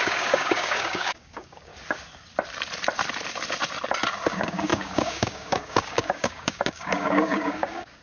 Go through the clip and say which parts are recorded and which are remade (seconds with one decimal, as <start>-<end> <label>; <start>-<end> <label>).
0.0-1.7 remade; 1.7-4.3 recorded; 4.3-8.0 remade